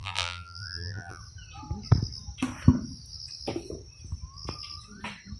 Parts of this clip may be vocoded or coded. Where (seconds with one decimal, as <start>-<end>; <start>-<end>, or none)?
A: 0.0-1.2